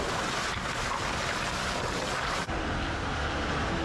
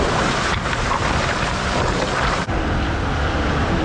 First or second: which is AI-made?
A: second